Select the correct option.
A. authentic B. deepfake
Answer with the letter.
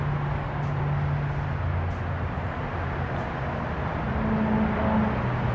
A